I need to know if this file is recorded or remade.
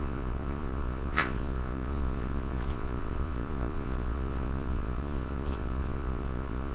remade